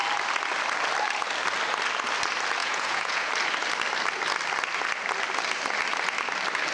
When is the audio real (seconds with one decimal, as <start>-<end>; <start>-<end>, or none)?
0.0-2.6; 3.3-6.7